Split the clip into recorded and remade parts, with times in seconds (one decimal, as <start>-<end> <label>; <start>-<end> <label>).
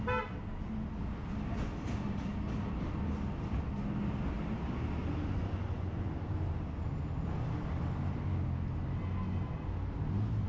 0.0-5.3 recorded; 5.3-6.3 remade; 6.3-10.5 recorded